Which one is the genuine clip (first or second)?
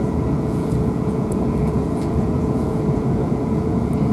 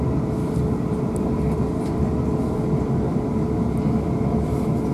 second